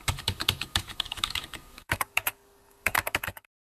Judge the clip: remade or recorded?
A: remade